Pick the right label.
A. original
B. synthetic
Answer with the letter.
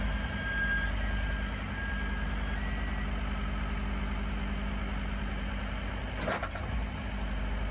A